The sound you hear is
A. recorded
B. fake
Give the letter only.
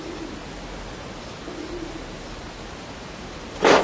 A